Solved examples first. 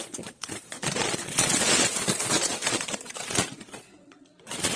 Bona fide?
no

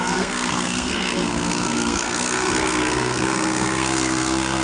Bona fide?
no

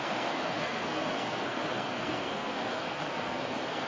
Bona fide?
no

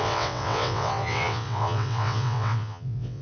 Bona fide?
no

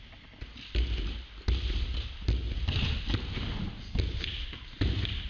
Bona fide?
yes